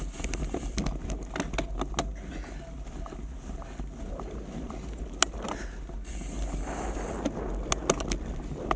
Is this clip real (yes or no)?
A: yes